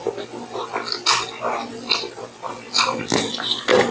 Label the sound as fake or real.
real